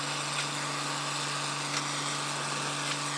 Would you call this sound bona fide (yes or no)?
yes